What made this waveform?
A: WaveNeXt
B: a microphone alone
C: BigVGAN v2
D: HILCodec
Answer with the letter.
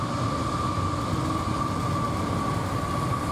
B